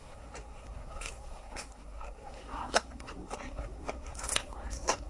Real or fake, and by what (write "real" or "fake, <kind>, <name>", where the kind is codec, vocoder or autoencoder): fake, codec, SNAC